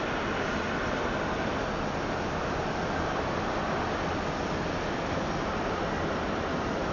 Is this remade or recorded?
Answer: recorded